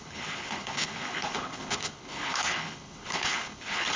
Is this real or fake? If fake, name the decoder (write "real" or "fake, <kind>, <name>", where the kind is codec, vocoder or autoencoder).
fake, codec, HILCodec